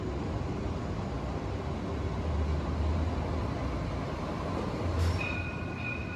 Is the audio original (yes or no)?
yes